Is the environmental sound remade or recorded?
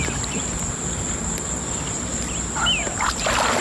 recorded